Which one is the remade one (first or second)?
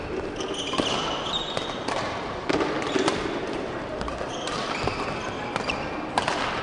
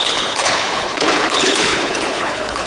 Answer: second